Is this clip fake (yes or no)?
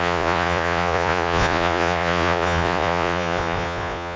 yes